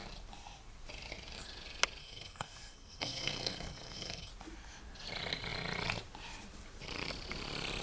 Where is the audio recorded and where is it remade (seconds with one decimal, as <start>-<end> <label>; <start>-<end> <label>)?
0.0-2.0 recorded; 2.0-4.3 remade; 4.3-7.8 recorded